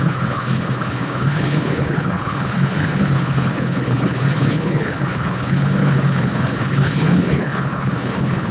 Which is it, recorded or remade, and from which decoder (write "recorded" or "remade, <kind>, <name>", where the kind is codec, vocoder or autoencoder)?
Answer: remade, codec, HILCodec